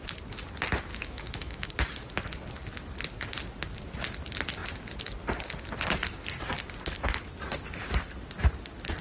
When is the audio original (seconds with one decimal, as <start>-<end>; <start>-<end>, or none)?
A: 0.0-0.9; 1.7-9.0